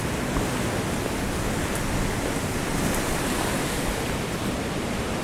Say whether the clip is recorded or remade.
recorded